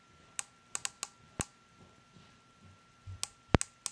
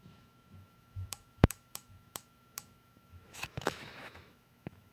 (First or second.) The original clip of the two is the first